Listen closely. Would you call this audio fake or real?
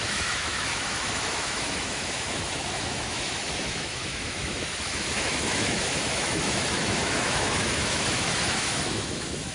fake